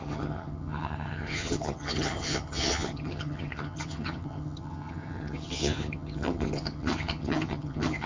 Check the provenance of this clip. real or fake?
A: fake